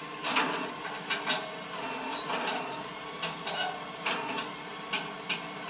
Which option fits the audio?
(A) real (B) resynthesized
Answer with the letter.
A